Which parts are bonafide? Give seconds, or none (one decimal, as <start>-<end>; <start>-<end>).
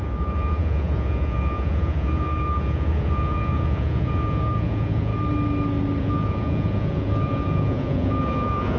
5.1-6.0